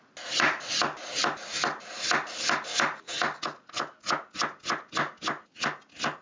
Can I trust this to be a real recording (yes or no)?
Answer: yes